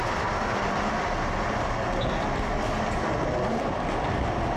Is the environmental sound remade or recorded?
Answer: recorded